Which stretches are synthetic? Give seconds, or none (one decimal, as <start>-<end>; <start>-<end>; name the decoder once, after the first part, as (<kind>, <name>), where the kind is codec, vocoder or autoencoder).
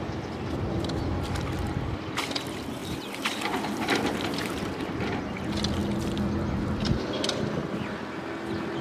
2.8-5.2 (vocoder, BigVGAN v2)